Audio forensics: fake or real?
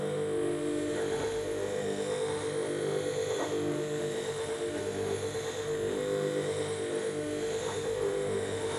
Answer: fake